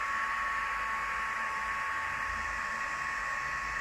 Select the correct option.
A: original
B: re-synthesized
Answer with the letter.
A